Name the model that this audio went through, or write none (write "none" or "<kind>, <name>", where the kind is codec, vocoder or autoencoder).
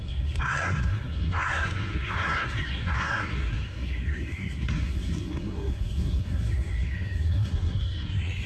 codec, SNAC